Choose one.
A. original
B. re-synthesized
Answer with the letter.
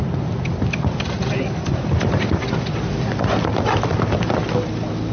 A